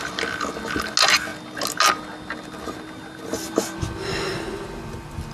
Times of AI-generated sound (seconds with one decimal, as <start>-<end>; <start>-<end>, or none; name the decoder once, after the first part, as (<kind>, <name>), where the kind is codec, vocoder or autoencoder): none